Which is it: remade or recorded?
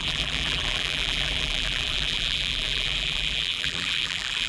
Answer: remade